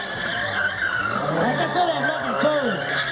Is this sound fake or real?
real